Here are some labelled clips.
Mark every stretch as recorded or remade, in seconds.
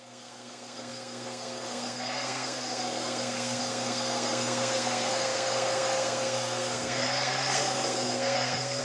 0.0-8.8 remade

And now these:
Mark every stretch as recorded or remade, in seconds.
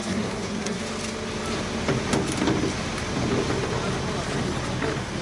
0.0-0.8 remade; 0.8-5.2 recorded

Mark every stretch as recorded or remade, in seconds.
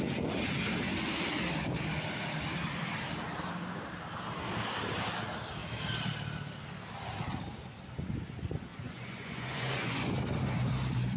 0.0-8.7 recorded; 8.7-10.1 remade; 10.1-11.2 recorded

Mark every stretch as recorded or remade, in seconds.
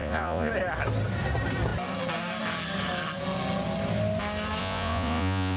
0.0-0.5 remade; 0.5-4.6 recorded; 4.6-5.6 remade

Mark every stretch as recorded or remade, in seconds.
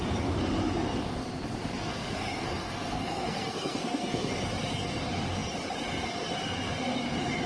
0.0-1.9 recorded; 1.9-4.3 remade; 4.3-7.5 recorded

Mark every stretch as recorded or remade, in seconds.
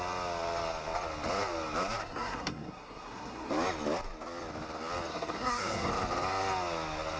0.0-2.0 recorded; 2.0-3.5 remade; 3.5-5.1 recorded; 5.1-5.9 remade; 5.9-7.2 recorded